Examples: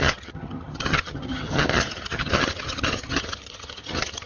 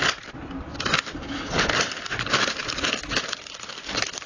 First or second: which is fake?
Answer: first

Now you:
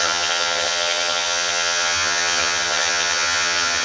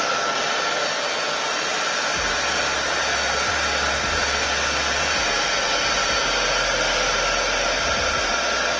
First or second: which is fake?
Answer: first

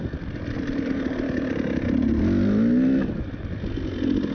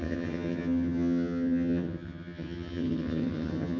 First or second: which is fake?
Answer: second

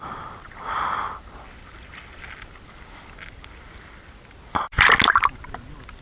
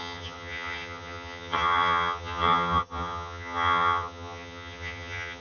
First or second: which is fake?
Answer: second